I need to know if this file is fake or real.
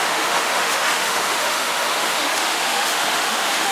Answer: fake